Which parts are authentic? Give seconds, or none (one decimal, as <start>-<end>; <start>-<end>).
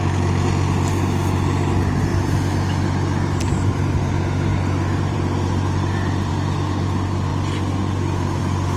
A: 0.0-4.5; 6.3-8.8